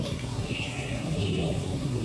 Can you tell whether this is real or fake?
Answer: fake